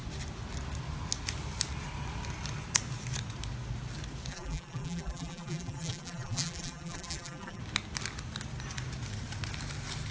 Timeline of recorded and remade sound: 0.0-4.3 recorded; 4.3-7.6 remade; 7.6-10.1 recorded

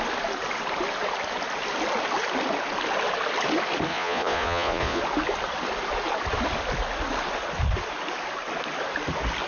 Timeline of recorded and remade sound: 0.0-3.9 recorded; 3.9-5.0 remade; 5.0-9.5 recorded

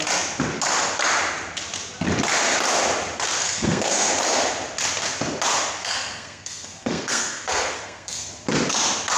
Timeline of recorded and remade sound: 0.0-3.4 recorded; 3.4-4.1 remade; 4.1-5.8 recorded; 5.8-8.3 remade; 8.3-9.2 recorded

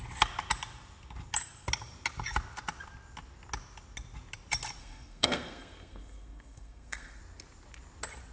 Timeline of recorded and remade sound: 0.0-4.8 recorded; 4.8-7.2 remade; 7.2-8.3 recorded

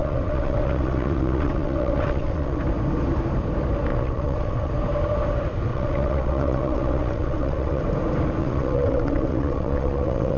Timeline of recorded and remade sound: 0.0-2.6 remade; 2.6-3.9 recorded; 3.9-4.7 remade; 4.7-5.7 recorded; 5.7-7.8 remade; 7.8-8.4 recorded; 8.4-10.4 remade

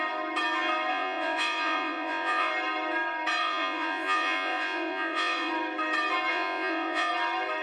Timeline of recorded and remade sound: 0.0-0.9 recorded; 0.9-2.5 remade; 2.5-3.4 recorded; 3.4-5.5 remade; 5.5-6.3 recorded; 6.3-7.1 remade; 7.1-7.6 recorded

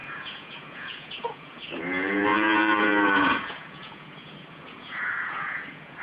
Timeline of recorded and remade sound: 0.0-6.0 remade

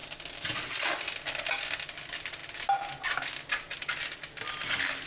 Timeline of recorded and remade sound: 0.0-5.1 recorded